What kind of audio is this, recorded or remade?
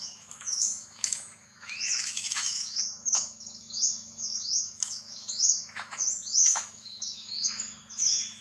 remade